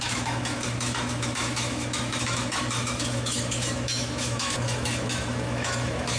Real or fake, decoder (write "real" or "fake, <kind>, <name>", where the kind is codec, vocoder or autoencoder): fake, autoencoder, DAC-VAE